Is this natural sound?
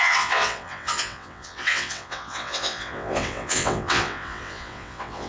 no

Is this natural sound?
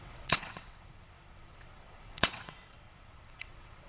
no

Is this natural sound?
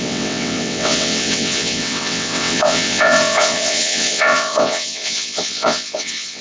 no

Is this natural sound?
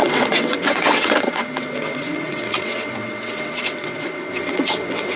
no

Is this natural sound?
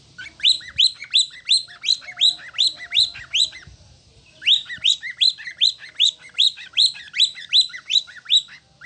yes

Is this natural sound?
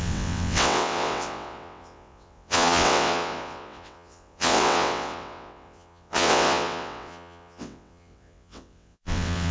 no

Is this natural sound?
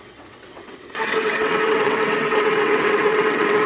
no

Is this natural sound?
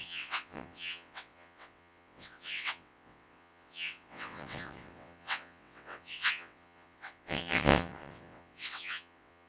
no